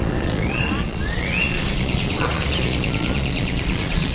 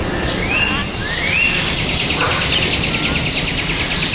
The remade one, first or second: first